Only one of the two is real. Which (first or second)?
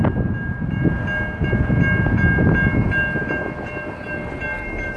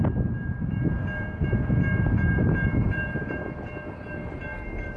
first